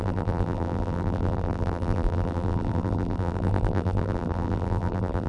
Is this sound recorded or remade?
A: remade